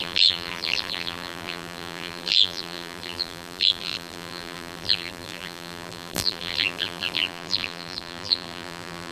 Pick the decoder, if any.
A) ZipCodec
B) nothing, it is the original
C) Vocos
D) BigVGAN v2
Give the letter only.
D